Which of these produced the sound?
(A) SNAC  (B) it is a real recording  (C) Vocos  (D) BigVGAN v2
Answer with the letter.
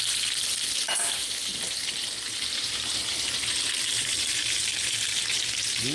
D